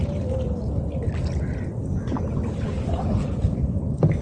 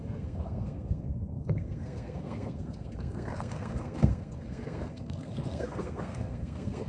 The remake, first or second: second